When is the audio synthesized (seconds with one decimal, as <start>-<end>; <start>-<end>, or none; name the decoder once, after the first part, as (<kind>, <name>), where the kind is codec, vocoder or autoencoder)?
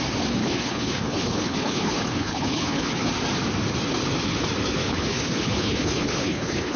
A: 0.4-3.1 (codec, HILCodec); 4.8-6.8